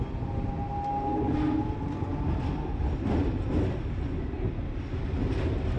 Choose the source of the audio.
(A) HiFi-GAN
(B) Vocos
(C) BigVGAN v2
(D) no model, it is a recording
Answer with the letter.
D